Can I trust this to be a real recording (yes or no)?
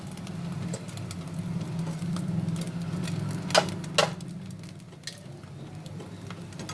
yes